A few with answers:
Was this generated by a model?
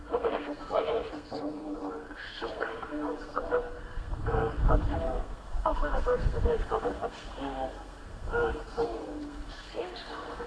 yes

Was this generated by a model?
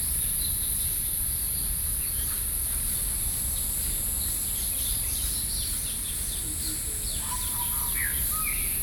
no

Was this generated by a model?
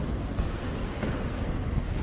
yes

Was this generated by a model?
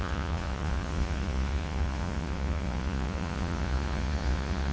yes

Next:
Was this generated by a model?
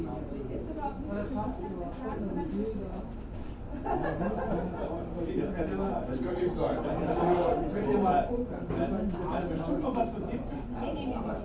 no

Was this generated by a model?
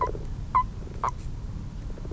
no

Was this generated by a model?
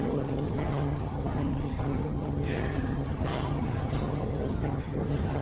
yes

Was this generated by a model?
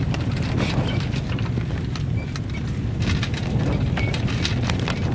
no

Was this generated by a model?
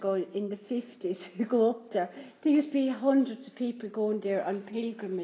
no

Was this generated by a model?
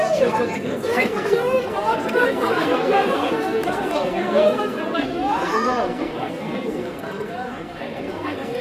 yes